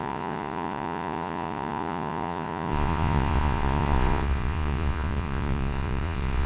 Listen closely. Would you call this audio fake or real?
fake